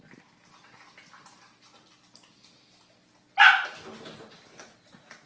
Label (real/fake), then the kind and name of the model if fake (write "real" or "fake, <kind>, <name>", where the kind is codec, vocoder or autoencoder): real